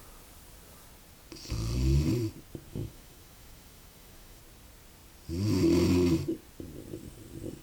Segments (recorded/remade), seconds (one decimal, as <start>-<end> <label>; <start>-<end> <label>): 0.0-2.7 recorded; 2.7-4.4 remade; 4.4-7.6 recorded